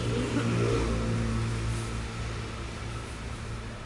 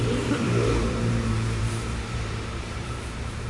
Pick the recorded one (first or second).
first